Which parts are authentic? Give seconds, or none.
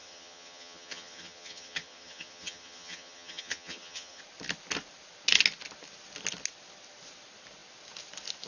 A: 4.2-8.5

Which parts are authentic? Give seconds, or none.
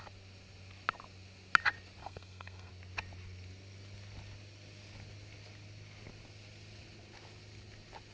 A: 0.0-2.0; 2.7-8.1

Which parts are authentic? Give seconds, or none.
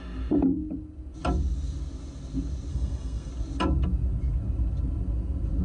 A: 0.0-2.7; 3.3-5.6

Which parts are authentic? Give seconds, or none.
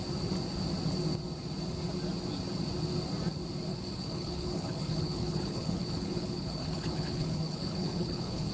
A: 0.0-3.7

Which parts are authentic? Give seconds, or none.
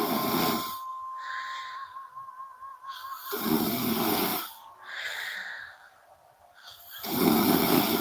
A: 0.9-1.6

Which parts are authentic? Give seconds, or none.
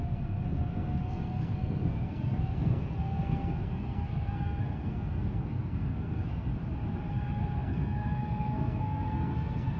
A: 6.5-7.1